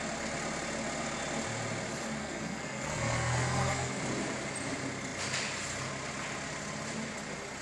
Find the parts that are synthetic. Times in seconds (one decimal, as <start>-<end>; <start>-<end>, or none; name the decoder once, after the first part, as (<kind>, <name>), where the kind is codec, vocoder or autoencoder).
2.2-4.0 (codec, SNAC)